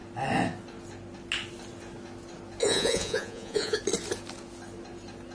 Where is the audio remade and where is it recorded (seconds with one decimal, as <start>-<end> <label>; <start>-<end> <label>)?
0.0-2.6 recorded; 2.6-3.8 remade; 3.8-5.3 recorded